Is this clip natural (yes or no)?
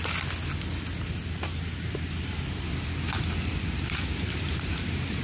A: yes